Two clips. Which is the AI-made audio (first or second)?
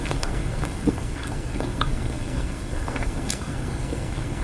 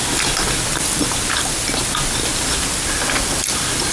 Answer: first